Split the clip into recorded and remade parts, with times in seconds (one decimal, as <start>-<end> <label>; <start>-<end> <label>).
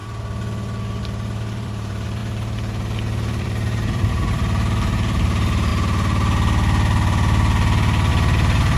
0.0-1.0 recorded; 1.0-5.7 remade; 5.7-8.1 recorded; 8.1-8.8 remade